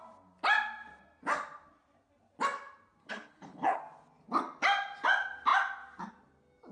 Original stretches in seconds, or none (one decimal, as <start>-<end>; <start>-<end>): 0.0-3.0; 3.8-6.7